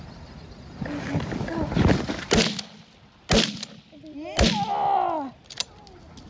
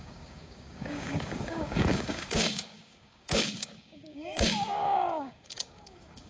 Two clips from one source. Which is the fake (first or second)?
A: second